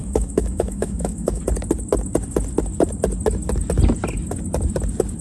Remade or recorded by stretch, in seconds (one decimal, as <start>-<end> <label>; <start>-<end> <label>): 0.0-1.4 remade; 1.4-5.2 recorded